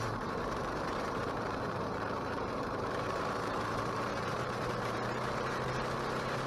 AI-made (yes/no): yes